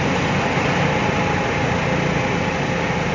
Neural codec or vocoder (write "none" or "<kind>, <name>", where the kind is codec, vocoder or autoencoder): none